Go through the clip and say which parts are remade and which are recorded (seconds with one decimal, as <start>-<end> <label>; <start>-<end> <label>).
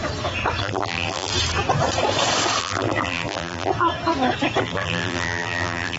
0.0-0.6 recorded; 0.6-1.3 remade; 1.3-2.6 recorded; 2.6-3.7 remade; 3.7-4.6 recorded; 4.6-6.0 remade